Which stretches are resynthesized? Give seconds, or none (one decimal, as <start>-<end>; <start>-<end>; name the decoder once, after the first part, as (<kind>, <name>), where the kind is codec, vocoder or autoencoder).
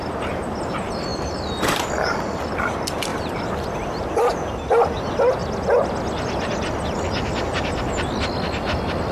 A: 3.1-4.5 (vocoder, BigVGAN v2)